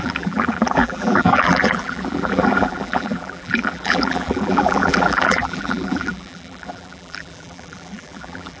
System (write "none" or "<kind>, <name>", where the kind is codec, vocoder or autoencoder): vocoder, BigVGAN v2